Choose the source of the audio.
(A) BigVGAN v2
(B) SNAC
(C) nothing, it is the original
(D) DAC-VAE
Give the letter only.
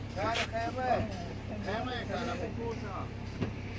A